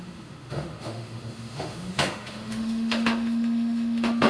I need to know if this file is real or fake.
fake